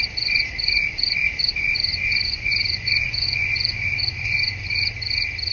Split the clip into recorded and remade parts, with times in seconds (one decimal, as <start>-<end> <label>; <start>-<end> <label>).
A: 0.0-1.9 recorded; 1.9-4.9 remade; 4.9-5.5 recorded